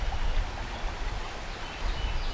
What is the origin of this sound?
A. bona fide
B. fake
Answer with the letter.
A